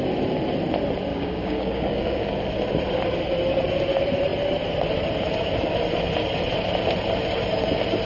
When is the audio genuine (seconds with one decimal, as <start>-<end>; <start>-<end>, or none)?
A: 0.0-1.1; 2.3-8.1